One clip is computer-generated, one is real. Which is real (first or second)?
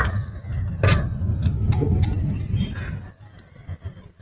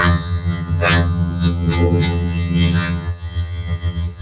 first